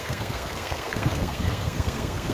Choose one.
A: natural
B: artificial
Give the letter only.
B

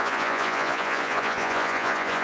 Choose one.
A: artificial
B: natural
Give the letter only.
A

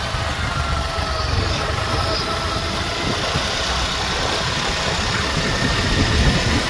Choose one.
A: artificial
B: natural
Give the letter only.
B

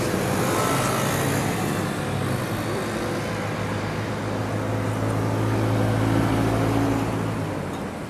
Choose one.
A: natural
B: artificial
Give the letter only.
A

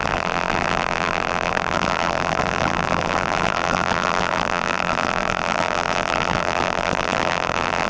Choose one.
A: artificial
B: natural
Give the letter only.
A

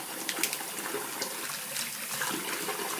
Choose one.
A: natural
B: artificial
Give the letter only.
A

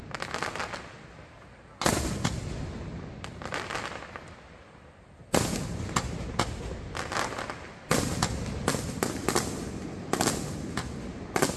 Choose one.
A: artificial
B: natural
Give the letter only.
B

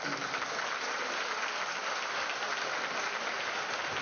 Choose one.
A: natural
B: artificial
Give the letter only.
A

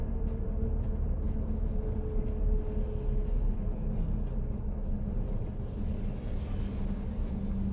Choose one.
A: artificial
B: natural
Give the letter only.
B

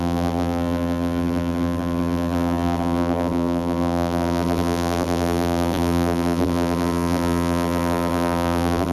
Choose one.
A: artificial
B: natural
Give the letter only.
A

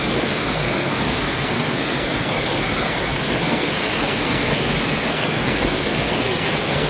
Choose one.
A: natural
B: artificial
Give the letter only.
B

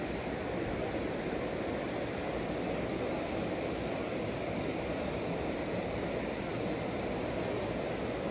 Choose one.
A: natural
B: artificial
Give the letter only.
A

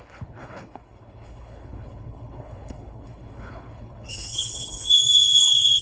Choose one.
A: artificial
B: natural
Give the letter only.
A